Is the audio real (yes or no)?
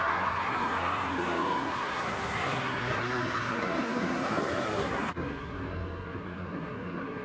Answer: no